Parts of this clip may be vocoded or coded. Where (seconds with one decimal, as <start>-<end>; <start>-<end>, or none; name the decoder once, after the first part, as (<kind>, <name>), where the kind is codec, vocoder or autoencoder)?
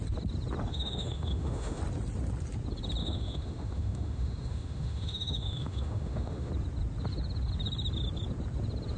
0.7-1.8 (autoencoder, DAC-VAE); 3.0-6.5